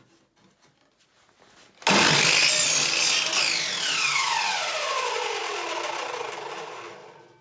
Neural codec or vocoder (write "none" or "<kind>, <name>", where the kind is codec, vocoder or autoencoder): none